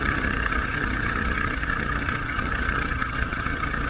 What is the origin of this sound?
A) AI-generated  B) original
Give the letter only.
A